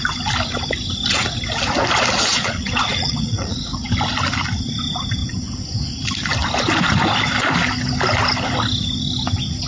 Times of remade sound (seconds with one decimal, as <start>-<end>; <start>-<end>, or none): 2.3-3.9